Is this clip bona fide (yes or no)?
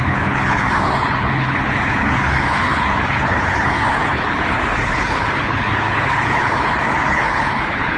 no